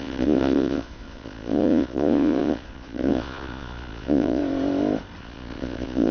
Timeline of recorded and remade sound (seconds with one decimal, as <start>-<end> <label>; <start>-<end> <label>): 0.0-4.4 remade; 4.4-5.2 recorded; 5.2-6.1 remade